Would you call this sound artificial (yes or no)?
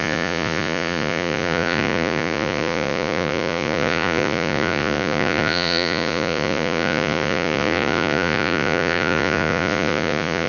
yes